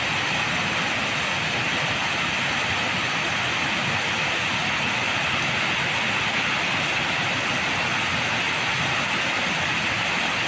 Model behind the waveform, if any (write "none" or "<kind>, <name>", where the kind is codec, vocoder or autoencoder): none